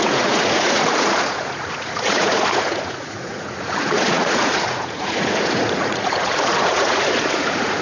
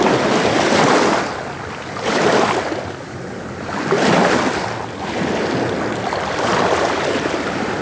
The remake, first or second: first